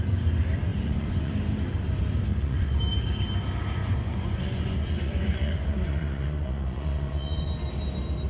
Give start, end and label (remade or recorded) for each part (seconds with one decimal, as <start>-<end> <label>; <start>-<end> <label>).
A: 0.0-0.7 recorded; 0.7-1.3 remade; 1.3-2.3 recorded; 2.3-2.8 remade; 2.8-3.8 recorded; 3.8-7.5 remade; 7.5-8.3 recorded